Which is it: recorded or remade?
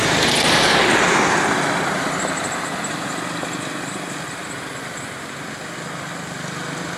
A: remade